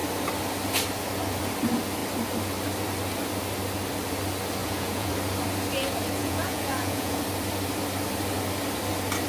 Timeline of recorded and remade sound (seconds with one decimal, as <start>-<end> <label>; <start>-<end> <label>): 0.0-4.6 recorded; 4.6-5.1 remade; 5.1-6.2 recorded; 6.2-7.2 remade; 7.2-9.3 recorded